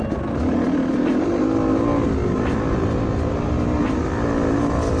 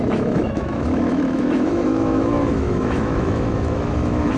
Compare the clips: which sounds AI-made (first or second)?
second